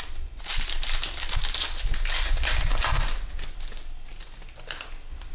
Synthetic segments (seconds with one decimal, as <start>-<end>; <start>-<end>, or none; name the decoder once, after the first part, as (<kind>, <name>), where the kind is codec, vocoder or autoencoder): none

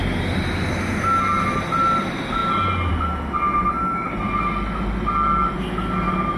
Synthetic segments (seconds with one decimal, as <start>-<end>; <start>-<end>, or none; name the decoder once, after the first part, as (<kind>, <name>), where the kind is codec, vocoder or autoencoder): none

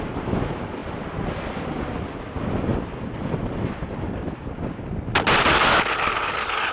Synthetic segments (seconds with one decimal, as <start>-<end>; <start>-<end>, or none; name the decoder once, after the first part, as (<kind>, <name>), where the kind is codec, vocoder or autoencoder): none